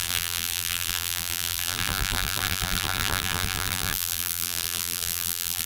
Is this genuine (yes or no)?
no